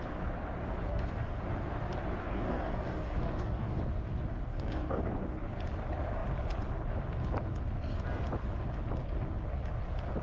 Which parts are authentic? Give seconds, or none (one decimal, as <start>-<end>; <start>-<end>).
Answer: 0.0-0.9; 1.4-2.2; 3.8-4.5; 5.1-10.2